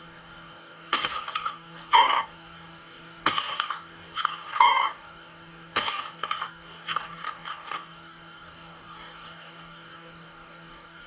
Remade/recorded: remade